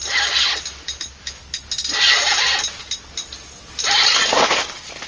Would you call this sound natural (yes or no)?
yes